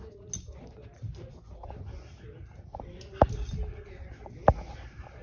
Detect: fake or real real